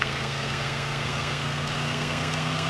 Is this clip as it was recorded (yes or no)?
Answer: no